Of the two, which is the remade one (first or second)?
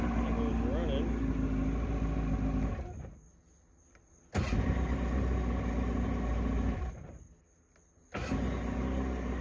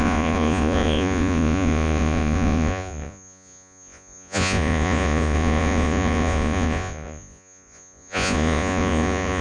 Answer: second